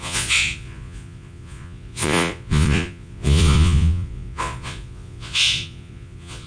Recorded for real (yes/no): no